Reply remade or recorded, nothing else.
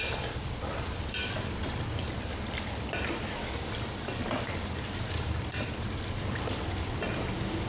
remade